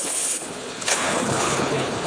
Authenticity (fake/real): fake